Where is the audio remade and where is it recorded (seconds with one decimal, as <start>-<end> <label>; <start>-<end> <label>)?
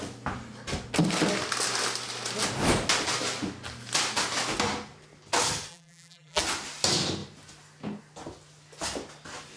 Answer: 0.0-5.7 recorded; 5.7-6.4 remade; 6.4-9.6 recorded